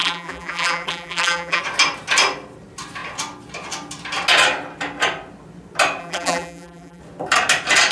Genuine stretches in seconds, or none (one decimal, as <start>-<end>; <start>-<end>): 1.6-6.0; 7.0-7.9